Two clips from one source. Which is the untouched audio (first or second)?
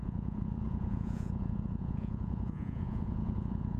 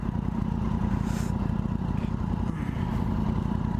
second